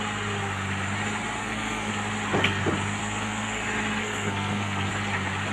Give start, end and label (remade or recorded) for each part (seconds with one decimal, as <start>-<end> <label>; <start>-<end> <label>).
0.0-1.4 recorded; 1.4-1.9 remade; 1.9-3.0 recorded; 3.0-3.6 remade; 3.6-4.0 recorded; 4.0-4.9 remade; 4.9-5.5 recorded